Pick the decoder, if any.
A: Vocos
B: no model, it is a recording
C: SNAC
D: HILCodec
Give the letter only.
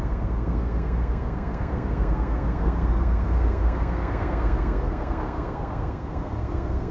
C